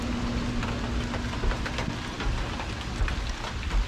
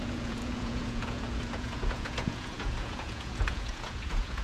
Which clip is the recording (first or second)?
first